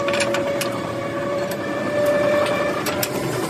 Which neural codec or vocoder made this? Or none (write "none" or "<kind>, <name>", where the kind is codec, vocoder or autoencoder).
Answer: vocoder, BigVGAN v2